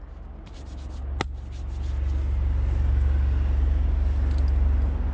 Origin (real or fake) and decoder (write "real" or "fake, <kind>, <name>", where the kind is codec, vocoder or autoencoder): real